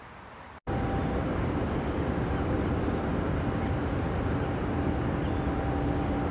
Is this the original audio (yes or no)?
yes